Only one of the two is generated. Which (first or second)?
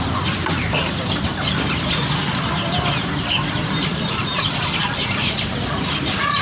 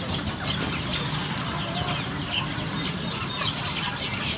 first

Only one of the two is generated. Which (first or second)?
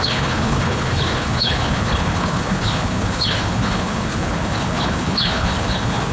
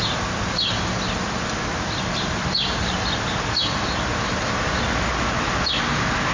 first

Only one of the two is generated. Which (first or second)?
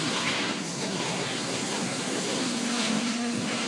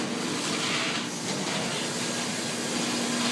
first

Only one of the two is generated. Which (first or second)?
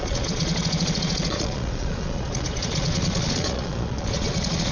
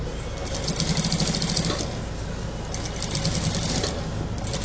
first